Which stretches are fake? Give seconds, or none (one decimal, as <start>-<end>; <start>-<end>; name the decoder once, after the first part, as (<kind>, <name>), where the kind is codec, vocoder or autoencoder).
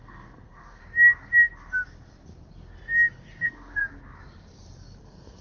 0.0-0.8 (codec, SNAC); 3.4-3.8; 5.0-5.4